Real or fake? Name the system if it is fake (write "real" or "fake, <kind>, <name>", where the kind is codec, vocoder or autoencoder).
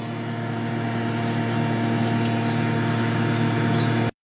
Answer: real